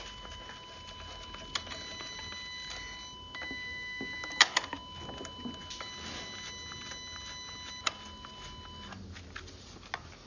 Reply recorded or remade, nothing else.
recorded